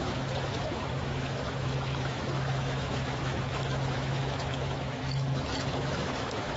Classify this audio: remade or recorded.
remade